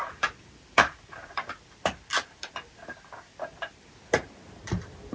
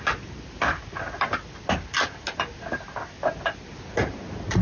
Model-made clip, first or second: first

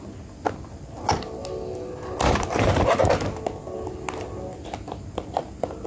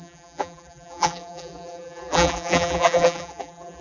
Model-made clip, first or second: second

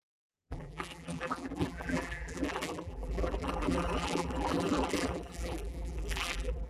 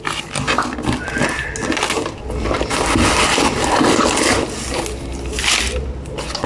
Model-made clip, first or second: first